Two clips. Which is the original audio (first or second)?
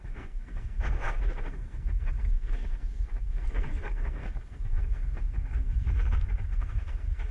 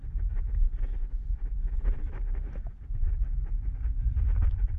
second